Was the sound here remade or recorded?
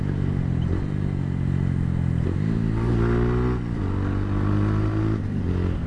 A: recorded